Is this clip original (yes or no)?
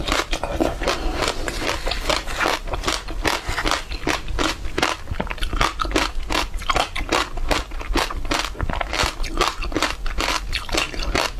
yes